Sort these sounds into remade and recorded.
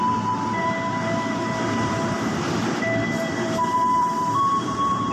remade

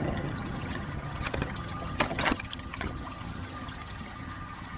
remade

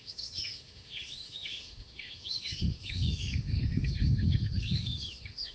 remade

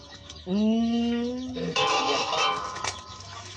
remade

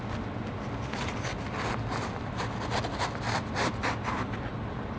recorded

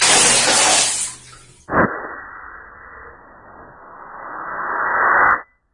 recorded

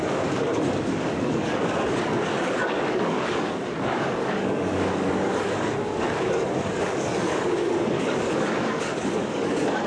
remade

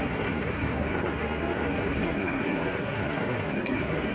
remade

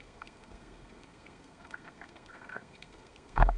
remade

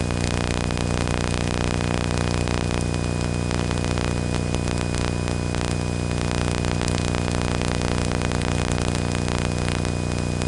recorded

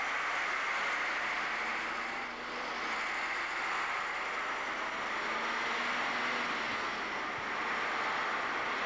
recorded